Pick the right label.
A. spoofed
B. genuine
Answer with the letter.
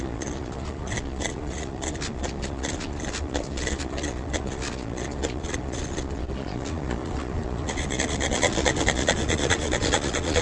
A